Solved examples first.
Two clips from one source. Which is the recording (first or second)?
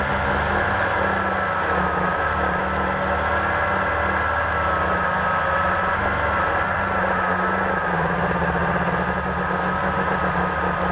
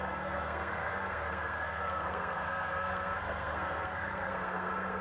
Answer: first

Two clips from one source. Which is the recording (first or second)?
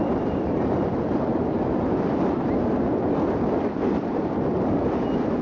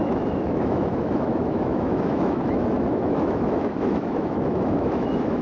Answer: first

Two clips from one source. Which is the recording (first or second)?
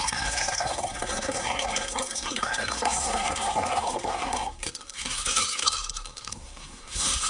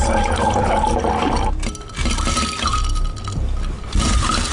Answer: second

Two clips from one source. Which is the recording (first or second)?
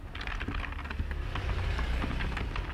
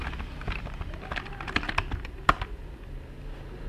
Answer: first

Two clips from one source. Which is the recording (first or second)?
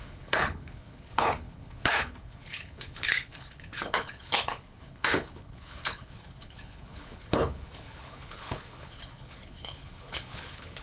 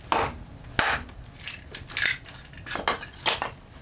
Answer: second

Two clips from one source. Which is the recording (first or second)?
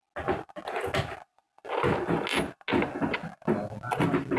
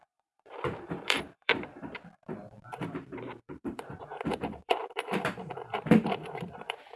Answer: first